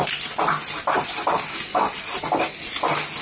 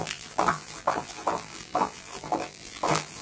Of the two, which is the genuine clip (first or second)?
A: first